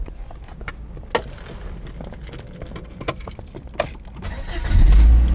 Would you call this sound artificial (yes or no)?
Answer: no